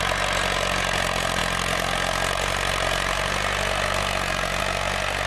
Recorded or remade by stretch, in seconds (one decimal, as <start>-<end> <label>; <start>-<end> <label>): 0.0-5.3 recorded